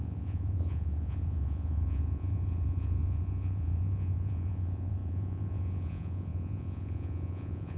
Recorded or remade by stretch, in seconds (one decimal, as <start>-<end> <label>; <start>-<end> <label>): 0.0-7.8 remade